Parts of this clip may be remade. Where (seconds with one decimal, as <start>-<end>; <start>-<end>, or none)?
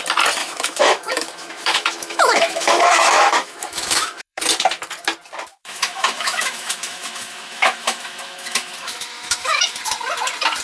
0.4-4.4; 5.5-9.8